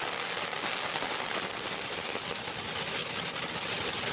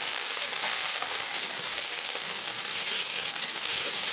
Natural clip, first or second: first